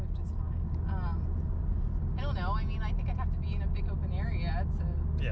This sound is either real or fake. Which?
real